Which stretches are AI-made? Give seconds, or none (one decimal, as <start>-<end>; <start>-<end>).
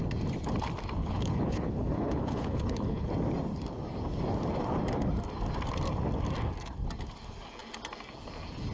1.0-3.1